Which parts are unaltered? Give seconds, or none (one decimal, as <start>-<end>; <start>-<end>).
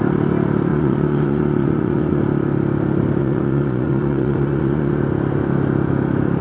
0.0-0.7; 2.2-3.2; 5.0-6.4